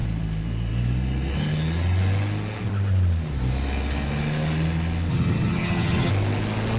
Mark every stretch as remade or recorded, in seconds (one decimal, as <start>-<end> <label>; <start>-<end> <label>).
0.0-5.1 recorded; 5.1-6.1 remade; 6.1-6.8 recorded